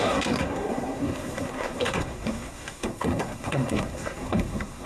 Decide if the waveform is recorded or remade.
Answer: remade